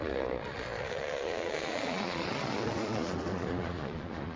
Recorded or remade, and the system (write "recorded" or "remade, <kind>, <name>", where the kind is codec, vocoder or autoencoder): remade, vocoder, Vocos